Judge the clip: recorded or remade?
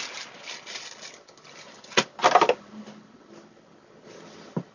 recorded